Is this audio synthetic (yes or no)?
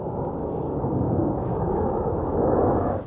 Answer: yes